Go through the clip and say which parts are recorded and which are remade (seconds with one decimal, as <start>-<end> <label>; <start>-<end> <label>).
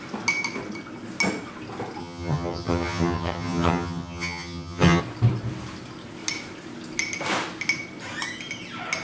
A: 0.0-2.0 recorded; 2.0-5.0 remade; 5.0-9.0 recorded